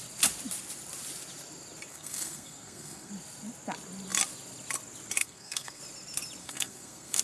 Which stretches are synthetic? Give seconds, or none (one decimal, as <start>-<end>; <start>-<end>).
1.9-3.1; 5.2-5.8; 6.4-7.2